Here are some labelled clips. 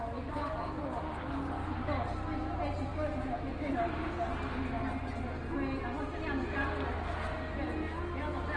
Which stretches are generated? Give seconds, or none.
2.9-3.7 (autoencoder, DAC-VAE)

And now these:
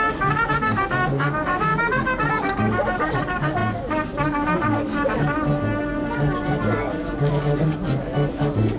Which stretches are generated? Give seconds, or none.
0.0-8.8 (codec, DAC)